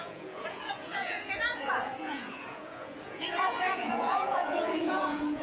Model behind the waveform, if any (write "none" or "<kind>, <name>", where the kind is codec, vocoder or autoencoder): vocoder, Vocos